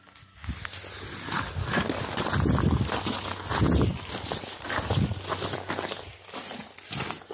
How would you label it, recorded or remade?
recorded